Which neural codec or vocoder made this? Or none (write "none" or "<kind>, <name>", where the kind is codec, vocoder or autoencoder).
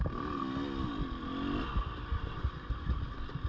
none